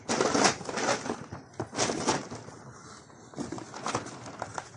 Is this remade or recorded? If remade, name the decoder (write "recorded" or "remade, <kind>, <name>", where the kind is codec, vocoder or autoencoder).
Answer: recorded